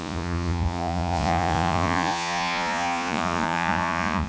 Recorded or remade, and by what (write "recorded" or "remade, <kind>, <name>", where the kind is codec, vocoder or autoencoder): remade, vocoder, Vocos